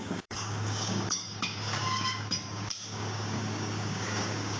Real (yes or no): no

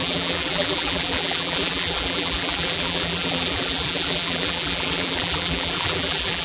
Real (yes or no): no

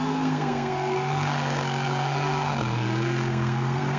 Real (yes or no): no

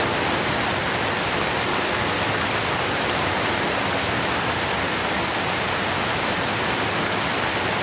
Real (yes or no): yes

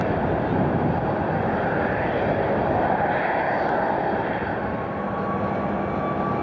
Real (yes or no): yes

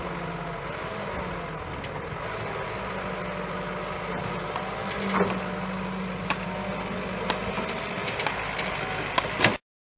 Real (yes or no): yes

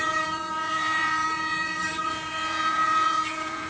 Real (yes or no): no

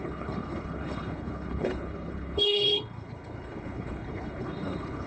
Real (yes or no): no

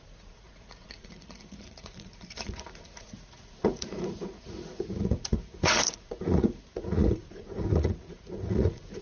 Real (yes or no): no